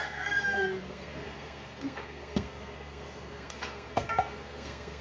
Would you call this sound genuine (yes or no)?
no